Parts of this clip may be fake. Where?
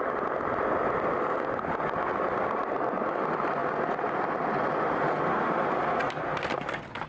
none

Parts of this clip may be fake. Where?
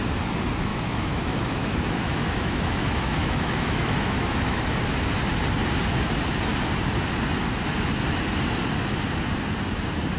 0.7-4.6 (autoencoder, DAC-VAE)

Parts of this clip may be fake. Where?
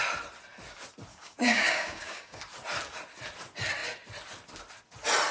1.1-2.4 (codec, DAC)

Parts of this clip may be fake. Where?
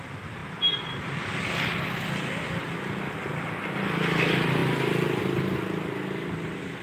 none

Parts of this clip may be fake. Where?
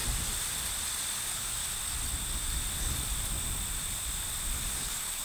1.2-1.6 (codec, DAC); 4.7-5.2